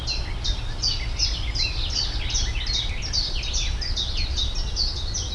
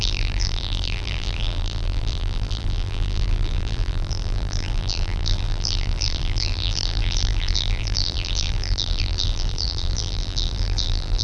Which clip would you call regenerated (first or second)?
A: second